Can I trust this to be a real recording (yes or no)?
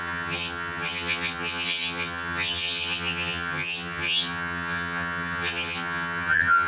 no